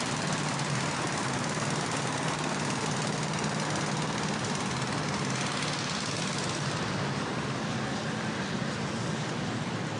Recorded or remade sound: recorded